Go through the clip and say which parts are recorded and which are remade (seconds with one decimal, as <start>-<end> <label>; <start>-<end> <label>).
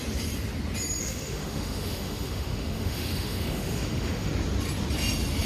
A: 0.0-1.0 recorded; 1.0-4.3 remade; 4.3-5.5 recorded